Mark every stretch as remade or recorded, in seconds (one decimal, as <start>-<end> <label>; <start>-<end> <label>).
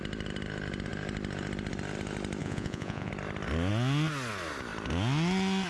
0.0-2.4 recorded; 2.4-3.1 remade; 3.1-5.7 recorded